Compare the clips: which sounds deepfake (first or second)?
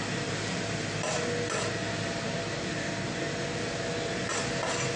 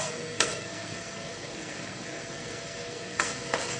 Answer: second